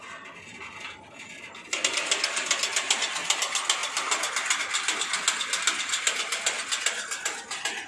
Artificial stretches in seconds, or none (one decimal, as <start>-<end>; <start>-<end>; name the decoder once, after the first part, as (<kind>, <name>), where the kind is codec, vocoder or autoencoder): none